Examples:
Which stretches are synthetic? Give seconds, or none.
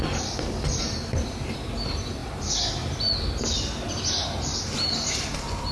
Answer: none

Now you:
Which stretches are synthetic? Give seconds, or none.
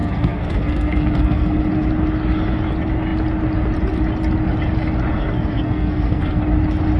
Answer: 0.0-1.6 (codec, SNAC); 5.1-6.4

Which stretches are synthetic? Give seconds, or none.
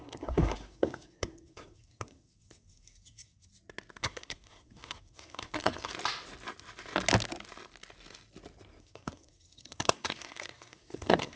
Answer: 0.0-3.5 (codec, SNAC); 4.0-5.9; 8.8-11.4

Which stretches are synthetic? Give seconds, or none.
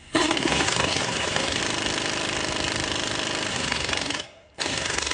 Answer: 0.0-1.6 (codec, SNAC); 3.5-5.1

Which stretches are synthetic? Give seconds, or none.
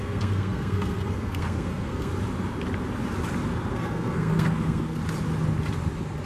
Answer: 0.0-2.1 (codec, SNAC); 3.7-5.0